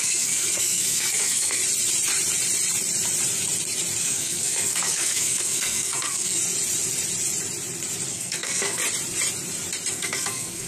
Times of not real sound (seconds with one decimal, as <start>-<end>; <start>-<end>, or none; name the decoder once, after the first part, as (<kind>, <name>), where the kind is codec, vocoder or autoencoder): 0.0-1.6 (codec, SNAC); 4.0-6.4; 8.1-8.8; 9.9-10.7